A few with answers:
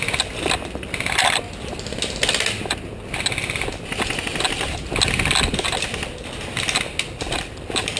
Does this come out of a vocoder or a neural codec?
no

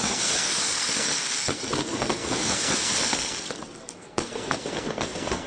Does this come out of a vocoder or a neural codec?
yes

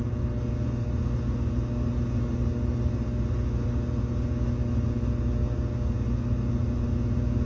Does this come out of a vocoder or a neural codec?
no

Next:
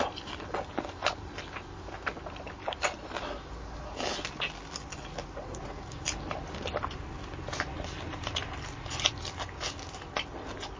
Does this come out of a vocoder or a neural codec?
no